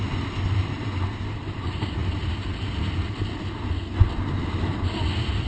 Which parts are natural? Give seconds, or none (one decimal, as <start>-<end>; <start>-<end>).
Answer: 0.0-5.5